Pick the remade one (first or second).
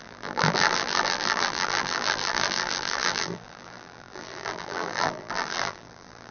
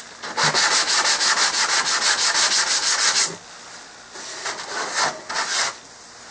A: first